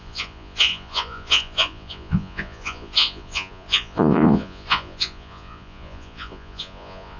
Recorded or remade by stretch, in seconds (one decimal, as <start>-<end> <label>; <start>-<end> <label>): 0.0-7.2 remade